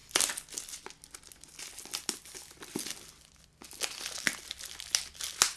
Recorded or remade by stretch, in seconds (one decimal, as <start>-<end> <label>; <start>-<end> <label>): 0.0-5.6 recorded